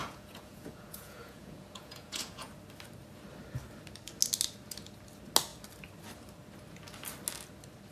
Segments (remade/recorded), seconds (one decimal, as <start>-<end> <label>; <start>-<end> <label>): 0.0-2.5 remade; 2.5-7.9 recorded